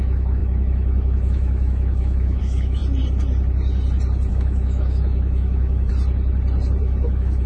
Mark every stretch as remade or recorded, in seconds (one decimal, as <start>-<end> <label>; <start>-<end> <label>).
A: 0.0-2.8 remade; 2.8-4.3 recorded; 4.3-5.9 remade; 5.9-6.8 recorded; 6.8-7.5 remade